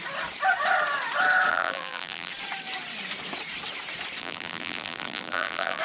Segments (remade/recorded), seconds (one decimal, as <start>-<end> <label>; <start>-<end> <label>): 0.0-1.5 recorded; 1.5-2.3 remade; 2.3-4.2 recorded; 4.2-5.8 remade